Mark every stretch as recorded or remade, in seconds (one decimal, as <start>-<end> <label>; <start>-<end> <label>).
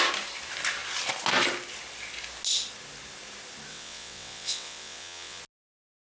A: 0.0-3.7 recorded; 3.7-5.4 remade; 5.4-6.0 recorded